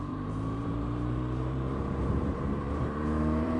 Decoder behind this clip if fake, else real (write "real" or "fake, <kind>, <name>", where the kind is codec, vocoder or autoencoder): fake, vocoder, BigVGAN v2